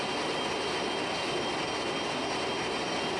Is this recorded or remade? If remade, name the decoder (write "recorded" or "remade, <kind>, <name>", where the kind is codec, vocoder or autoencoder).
recorded